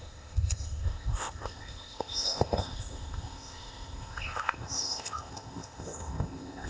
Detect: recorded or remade remade